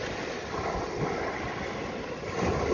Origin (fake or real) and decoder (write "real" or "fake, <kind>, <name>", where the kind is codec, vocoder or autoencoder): real